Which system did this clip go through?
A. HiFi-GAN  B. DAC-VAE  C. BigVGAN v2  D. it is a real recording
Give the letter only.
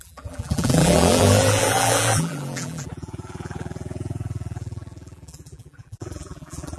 C